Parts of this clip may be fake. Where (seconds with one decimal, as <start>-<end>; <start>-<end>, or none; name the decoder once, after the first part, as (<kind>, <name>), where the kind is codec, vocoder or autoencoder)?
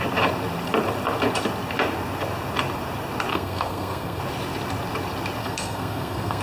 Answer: 3.3-4.2 (codec, SNAC); 5.4-6.4